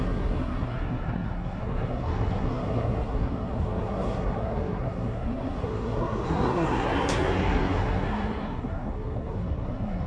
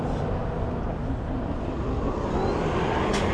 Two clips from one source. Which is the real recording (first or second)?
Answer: second